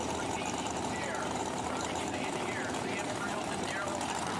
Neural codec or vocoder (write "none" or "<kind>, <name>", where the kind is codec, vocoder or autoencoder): vocoder, BigVGAN v2